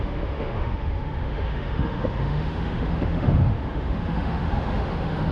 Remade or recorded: remade